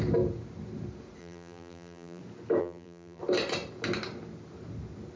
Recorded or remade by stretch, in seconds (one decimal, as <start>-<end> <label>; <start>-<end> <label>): 0.0-1.2 recorded; 1.2-2.2 remade; 2.2-2.6 recorded; 2.6-3.2 remade; 3.2-5.2 recorded